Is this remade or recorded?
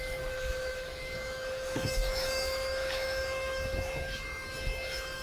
remade